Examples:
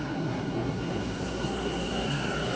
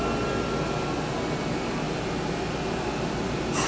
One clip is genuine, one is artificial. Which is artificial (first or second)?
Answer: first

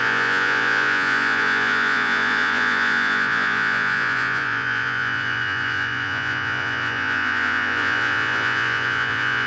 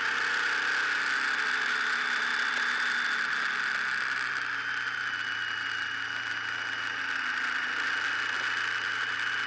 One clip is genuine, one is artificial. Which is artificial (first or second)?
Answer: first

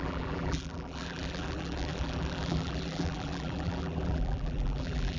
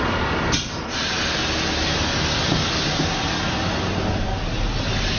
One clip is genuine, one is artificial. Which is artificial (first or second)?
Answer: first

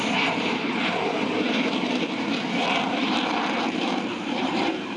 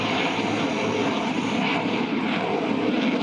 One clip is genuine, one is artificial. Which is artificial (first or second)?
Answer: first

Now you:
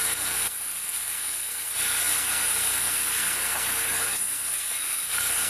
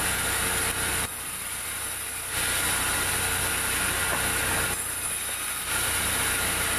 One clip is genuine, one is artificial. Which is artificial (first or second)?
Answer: first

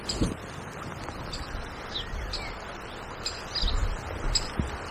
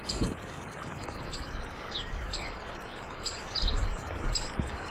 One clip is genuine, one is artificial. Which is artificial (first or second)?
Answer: second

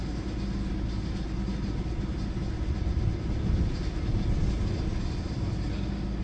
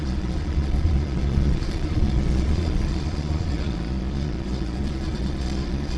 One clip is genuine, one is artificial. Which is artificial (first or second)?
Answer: second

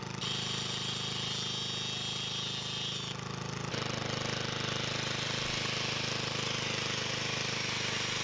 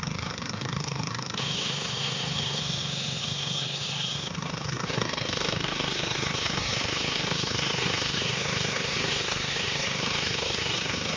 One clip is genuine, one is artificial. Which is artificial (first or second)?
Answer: second